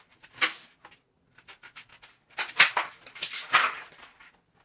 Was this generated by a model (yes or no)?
no